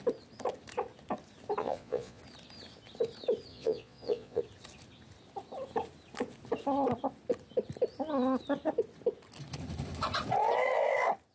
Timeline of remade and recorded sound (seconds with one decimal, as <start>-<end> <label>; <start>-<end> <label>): 0.0-1.6 recorded; 1.6-2.2 remade; 2.2-3.5 recorded; 3.5-4.4 remade; 4.4-11.3 recorded